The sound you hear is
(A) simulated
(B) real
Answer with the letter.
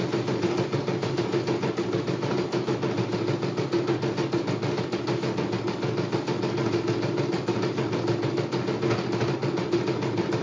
B